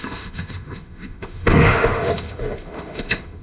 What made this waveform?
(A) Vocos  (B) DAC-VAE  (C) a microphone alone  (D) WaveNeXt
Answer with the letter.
B